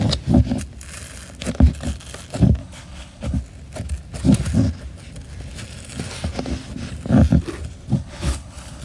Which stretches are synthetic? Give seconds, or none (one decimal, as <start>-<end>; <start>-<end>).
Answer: 2.6-3.4; 7.9-8.8